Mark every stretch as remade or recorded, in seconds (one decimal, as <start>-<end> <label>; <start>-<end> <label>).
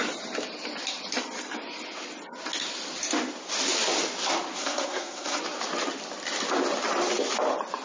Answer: 0.0-4.5 recorded; 4.5-5.4 remade; 5.4-7.8 recorded